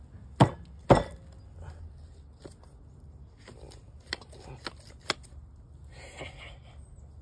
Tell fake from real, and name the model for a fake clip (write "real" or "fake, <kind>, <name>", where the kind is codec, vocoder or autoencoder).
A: real